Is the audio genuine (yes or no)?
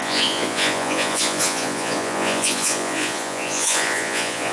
no